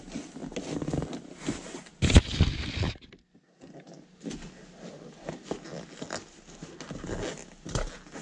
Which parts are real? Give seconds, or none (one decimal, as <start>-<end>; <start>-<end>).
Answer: 0.0-8.2